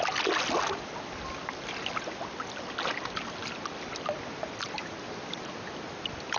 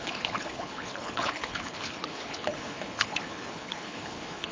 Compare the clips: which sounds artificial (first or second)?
second